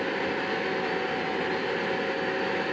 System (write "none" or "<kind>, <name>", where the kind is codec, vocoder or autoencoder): none